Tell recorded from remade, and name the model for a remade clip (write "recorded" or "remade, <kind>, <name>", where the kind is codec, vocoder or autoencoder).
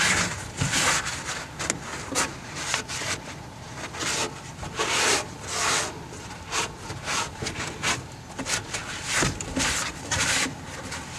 remade, vocoder, BigVGAN v2